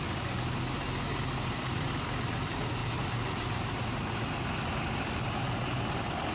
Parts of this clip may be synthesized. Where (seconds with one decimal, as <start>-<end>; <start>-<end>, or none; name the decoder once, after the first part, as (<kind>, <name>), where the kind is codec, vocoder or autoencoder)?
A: 2.8-4.0 (vocoder, BigVGAN v2)